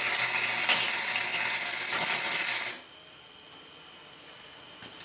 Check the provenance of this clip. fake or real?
real